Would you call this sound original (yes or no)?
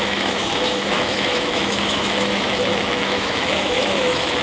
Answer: no